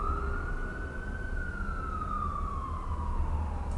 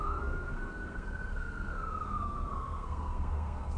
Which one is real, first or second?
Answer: first